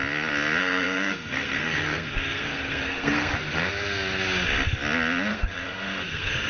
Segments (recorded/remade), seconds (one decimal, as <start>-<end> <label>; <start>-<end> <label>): 0.0-0.6 recorded; 0.6-3.3 remade; 3.3-5.3 recorded; 5.3-6.5 remade